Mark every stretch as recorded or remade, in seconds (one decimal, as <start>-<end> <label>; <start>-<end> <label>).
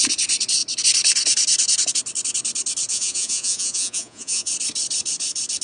0.0-2.9 recorded; 2.9-4.5 remade; 4.5-5.6 recorded